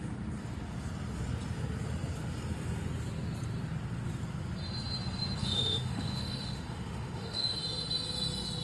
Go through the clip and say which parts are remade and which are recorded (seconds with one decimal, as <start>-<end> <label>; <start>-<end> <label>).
0.0-5.4 recorded; 5.4-7.6 remade; 7.6-8.6 recorded